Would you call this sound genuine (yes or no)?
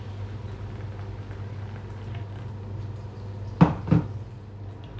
yes